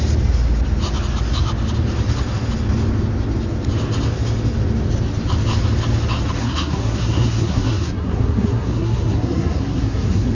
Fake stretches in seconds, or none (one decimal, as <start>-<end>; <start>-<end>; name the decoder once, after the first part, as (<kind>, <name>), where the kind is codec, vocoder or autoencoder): 6.4-10.3 (codec, SNAC)